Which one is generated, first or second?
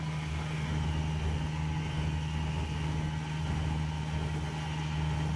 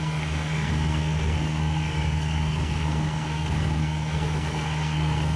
second